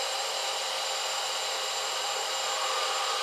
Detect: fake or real real